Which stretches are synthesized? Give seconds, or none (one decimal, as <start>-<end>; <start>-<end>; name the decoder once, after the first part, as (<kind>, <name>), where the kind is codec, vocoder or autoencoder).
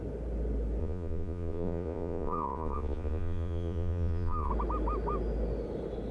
0.8-4.5 (vocoder, Vocos)